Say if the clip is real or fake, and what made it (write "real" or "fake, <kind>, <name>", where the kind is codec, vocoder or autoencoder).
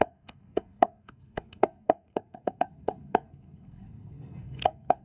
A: fake, codec, SNAC